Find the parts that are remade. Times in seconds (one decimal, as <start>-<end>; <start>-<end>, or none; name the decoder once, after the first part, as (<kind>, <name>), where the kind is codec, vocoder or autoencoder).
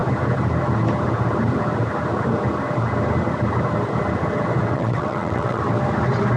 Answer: 4.7-5.6 (vocoder, WaveNeXt)